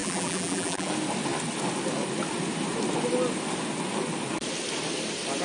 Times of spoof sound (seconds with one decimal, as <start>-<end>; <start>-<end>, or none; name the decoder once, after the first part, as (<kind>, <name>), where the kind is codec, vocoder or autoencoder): 0.0-0.9 (vocoder, BigVGAN v2)